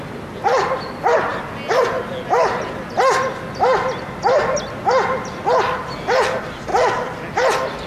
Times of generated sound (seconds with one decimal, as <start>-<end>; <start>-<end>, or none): none